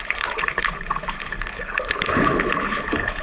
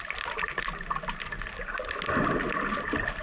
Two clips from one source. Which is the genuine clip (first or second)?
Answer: second